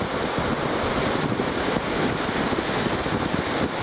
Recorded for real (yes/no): yes